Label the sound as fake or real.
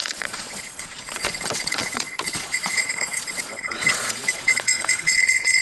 fake